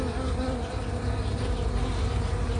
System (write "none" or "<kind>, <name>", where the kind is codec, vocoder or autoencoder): none